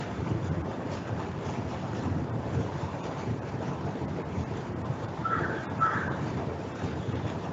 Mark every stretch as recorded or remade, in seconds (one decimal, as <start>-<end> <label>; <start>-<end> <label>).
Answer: 0.0-0.7 remade; 0.7-1.9 recorded; 1.9-7.5 remade